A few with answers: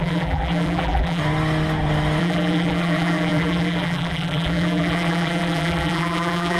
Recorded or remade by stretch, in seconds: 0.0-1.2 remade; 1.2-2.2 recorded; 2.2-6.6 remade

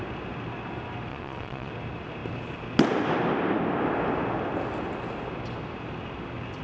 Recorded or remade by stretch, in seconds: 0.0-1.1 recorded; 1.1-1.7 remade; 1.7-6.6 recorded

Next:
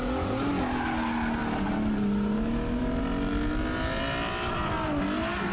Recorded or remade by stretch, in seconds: 0.0-5.5 recorded

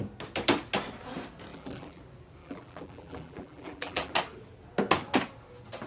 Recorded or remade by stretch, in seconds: 0.0-1.5 recorded; 1.5-2.0 remade; 2.0-2.4 recorded; 2.4-4.1 remade; 4.1-5.9 recorded